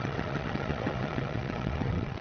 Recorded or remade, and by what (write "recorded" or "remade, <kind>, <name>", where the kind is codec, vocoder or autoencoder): remade, vocoder, WaveNeXt